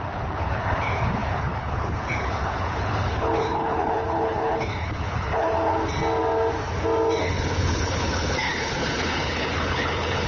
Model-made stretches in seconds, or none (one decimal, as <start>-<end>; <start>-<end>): 0.0-5.7; 7.2-10.3